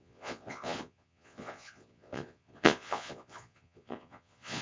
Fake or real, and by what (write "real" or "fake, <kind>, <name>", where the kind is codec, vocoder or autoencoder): fake, vocoder, Vocos